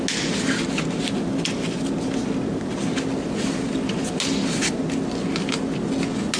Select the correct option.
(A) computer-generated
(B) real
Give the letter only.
B